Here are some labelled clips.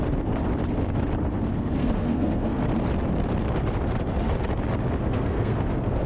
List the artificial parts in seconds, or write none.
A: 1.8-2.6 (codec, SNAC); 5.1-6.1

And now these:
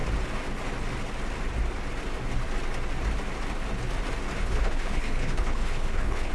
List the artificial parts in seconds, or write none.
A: 4.4-6.3 (codec, HILCodec)

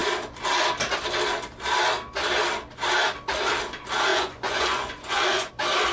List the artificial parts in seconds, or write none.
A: 4.1-5.5 (vocoder, Vocos)

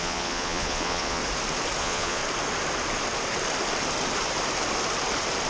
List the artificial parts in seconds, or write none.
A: 0.0-1.2 (vocoder, Vocos); 1.8-2.2

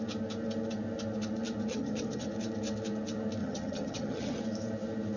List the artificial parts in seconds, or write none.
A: 1.7-2.3 (vocoder, HiFi-GAN); 3.4-4.4

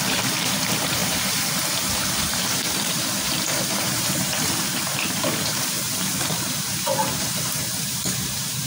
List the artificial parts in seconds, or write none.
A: 0.0-8.7 (vocoder, BigVGAN v2)

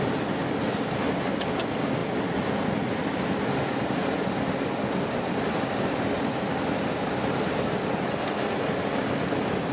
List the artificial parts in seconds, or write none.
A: none